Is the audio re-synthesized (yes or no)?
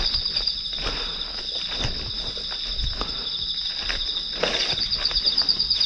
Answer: no